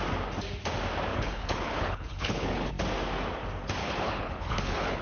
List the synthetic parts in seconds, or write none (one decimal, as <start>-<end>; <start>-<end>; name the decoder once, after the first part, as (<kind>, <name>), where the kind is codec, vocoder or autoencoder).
1.1-2.7 (codec, HILCodec); 3.8-5.0

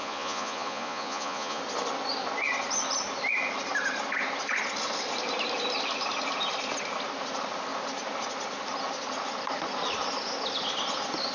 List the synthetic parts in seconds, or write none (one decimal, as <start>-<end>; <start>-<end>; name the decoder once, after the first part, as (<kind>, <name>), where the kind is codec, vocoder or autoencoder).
0.0-1.6 (vocoder, Vocos)